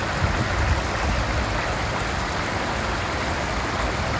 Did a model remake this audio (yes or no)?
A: no